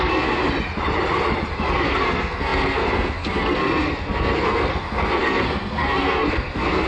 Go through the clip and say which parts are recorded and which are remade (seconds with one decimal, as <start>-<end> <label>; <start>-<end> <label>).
0.0-0.4 remade; 0.4-1.7 recorded; 1.7-6.9 remade